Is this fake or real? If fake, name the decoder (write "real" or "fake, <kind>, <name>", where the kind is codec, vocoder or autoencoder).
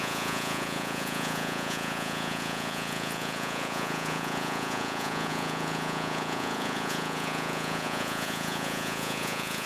fake, vocoder, Vocos